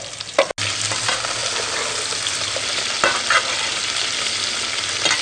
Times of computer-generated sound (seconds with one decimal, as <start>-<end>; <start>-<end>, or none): none